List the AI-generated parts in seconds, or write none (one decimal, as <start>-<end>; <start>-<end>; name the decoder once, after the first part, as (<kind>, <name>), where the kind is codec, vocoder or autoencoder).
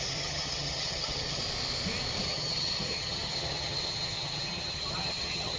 0.0-1.4 (vocoder, HiFi-GAN); 2.2-5.6